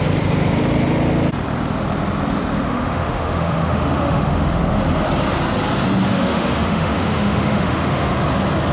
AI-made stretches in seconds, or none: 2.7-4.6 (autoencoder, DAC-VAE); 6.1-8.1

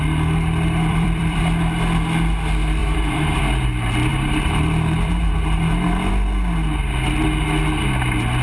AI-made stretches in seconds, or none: 0.9-1.4 (vocoder, BigVGAN v2); 2.8-3.4; 4.1-6.1

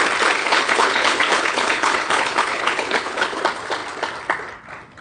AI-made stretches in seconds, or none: 0.4-3.4 (codec, HILCodec)

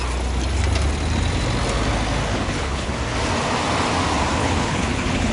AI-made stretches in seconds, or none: 2.3-2.9 (codec, HILCodec); 4.4-5.3

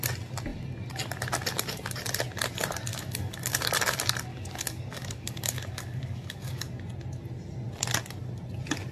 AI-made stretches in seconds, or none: 2.9-3.7 (codec, DAC); 4.3-6.8